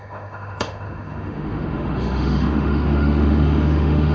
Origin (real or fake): fake